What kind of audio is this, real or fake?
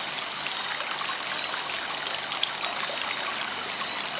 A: real